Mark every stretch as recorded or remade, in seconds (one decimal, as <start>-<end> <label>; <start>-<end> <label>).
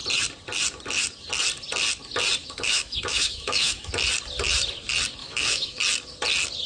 0.0-2.4 recorded; 2.4-3.9 remade; 3.9-5.2 recorded; 5.2-5.8 remade; 5.8-6.7 recorded